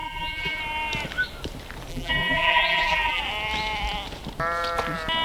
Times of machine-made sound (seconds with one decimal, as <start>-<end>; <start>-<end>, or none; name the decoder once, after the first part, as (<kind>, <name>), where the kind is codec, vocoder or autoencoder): 0.0-0.6 (vocoder, BigVGAN v2); 1.9-3.2